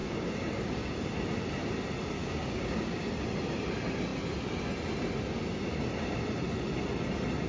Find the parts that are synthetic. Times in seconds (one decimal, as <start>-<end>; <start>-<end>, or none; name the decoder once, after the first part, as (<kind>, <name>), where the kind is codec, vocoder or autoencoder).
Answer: 0.0-0.9 (codec, DAC); 2.2-3.1